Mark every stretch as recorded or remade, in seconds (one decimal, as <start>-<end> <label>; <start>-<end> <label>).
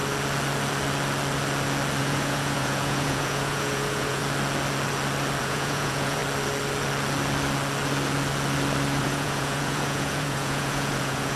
0.0-2.0 recorded; 2.0-4.2 remade; 4.2-5.4 recorded; 5.4-6.2 remade; 6.2-9.0 recorded; 9.0-11.4 remade